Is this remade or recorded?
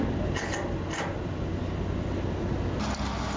recorded